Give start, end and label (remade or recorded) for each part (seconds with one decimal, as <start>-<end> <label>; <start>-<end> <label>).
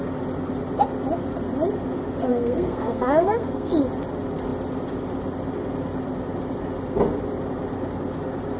0.0-2.3 recorded; 2.3-3.7 remade; 3.7-8.6 recorded